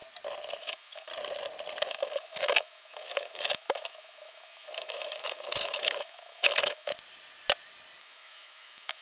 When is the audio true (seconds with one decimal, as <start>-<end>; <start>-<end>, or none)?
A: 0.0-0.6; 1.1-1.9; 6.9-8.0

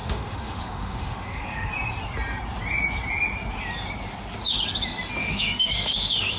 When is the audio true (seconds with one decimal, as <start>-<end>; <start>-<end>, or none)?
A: 1.7-5.2

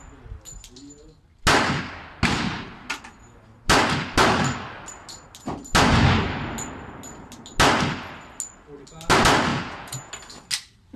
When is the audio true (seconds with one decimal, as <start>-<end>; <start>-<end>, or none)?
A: 0.0-9.5; 10.1-11.0